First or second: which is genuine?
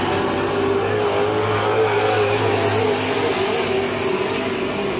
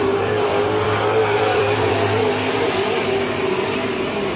first